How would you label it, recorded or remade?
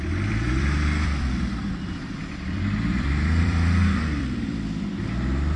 remade